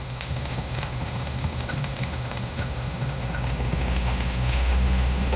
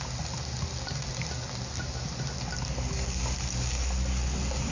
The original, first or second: second